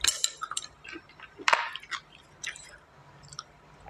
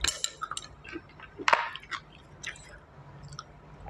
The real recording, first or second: second